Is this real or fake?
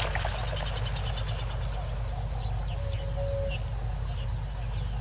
real